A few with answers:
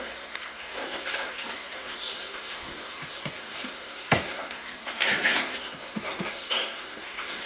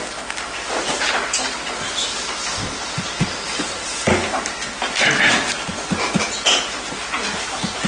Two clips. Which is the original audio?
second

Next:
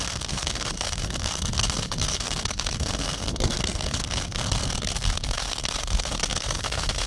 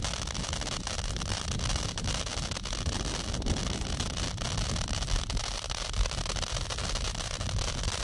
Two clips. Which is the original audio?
second